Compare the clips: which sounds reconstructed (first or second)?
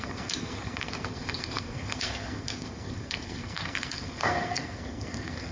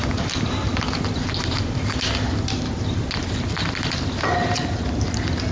first